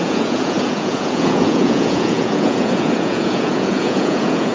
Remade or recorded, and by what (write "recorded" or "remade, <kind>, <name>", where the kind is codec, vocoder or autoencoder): remade, vocoder, Vocos